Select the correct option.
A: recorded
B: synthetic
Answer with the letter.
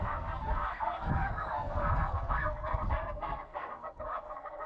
B